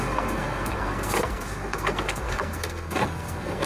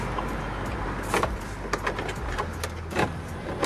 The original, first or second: second